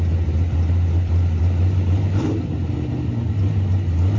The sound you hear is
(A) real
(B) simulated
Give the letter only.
A